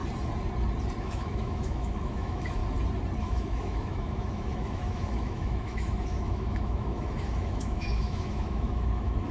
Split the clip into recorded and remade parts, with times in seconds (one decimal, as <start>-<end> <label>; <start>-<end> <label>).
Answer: 0.0-1.0 recorded; 1.0-2.6 remade; 2.6-3.2 recorded; 3.2-9.3 remade